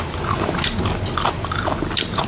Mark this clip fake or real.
real